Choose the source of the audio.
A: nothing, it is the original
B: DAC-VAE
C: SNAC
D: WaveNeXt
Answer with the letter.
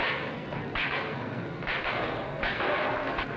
C